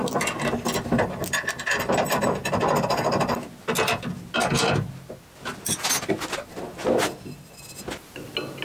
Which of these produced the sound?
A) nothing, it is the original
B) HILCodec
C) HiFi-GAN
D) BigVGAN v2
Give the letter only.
A